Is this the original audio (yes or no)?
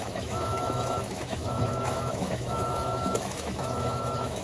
no